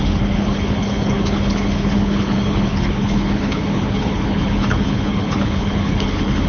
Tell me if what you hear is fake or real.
fake